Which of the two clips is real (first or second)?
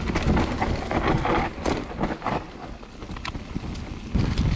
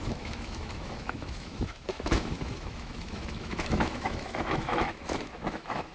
first